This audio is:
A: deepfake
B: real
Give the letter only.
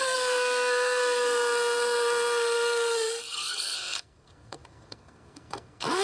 A